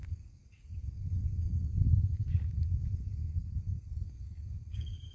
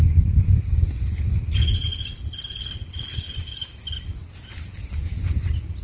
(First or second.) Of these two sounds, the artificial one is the first